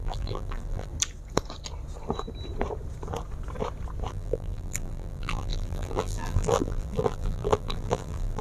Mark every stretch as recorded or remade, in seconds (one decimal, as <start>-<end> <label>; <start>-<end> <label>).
0.0-0.9 remade; 0.9-4.1 recorded; 4.1-8.4 remade